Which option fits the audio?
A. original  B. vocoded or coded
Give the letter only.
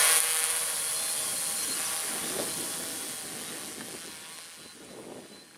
A